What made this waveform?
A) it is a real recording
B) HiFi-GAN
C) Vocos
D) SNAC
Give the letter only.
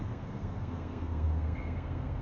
D